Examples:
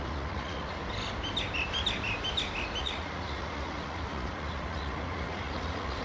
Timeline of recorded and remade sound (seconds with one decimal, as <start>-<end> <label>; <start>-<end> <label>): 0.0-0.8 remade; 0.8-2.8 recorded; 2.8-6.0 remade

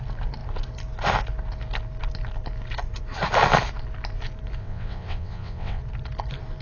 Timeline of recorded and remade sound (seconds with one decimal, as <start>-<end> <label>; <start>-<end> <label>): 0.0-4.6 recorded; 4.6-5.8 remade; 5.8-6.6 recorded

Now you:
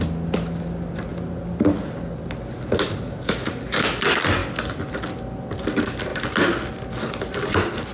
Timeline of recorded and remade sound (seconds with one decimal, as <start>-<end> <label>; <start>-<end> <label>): 0.0-7.9 recorded

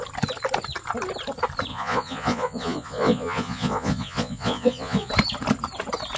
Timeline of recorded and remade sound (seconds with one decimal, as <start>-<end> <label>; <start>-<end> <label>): 0.0-1.7 recorded; 1.7-5.1 remade; 5.1-6.2 recorded

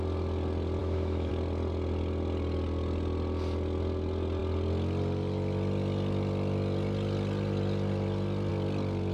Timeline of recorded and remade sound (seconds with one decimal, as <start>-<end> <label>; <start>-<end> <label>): 0.0-0.8 recorded; 0.8-1.3 remade; 1.3-9.1 recorded

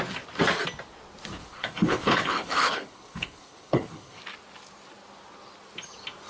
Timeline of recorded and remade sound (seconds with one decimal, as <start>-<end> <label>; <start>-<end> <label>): 0.0-1.4 recorded; 1.4-4.2 remade; 4.2-6.3 recorded

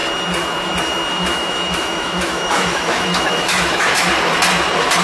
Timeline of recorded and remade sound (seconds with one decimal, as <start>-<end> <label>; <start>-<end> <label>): 0.0-1.1 recorded; 1.1-4.1 remade; 4.1-5.0 recorded